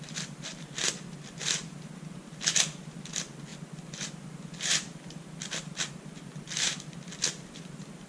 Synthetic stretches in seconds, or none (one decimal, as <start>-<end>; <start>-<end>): none